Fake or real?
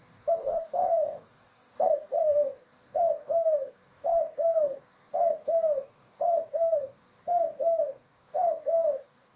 fake